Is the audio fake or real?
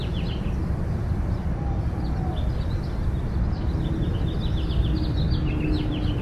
real